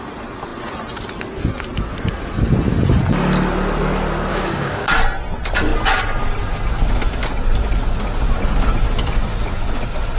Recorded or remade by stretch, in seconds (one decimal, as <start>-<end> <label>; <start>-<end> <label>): 0.0-4.3 recorded; 4.3-4.9 remade; 4.9-10.2 recorded

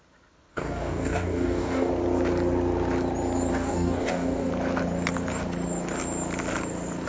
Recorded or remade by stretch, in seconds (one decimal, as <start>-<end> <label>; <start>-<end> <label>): 0.0-0.5 recorded; 0.5-1.9 remade; 1.9-3.5 recorded; 3.5-4.5 remade; 4.5-7.1 recorded

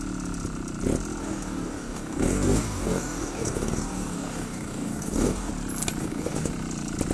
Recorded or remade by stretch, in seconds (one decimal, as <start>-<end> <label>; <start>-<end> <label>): 0.0-1.2 recorded; 1.2-5.5 remade; 5.5-6.0 recorded; 6.0-6.5 remade; 6.5-7.1 recorded

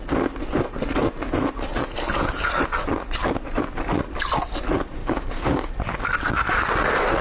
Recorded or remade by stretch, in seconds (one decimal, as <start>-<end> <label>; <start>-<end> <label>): 0.0-5.0 recorded; 5.0-5.7 remade; 5.7-7.2 recorded

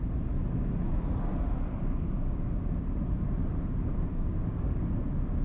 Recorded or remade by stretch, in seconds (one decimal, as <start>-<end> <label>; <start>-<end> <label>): 0.0-1.8 recorded; 1.8-2.7 remade; 2.7-4.1 recorded; 4.1-4.8 remade; 4.8-5.4 recorded

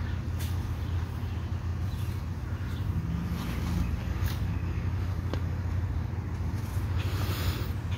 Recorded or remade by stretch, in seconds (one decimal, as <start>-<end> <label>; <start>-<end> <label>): 0.0-4.0 recorded; 4.0-6.1 remade; 6.1-8.0 recorded

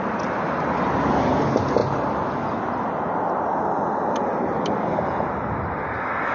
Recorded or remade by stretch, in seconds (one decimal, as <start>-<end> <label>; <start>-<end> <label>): 0.0-6.3 recorded